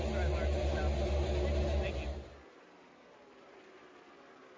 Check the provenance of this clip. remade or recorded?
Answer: recorded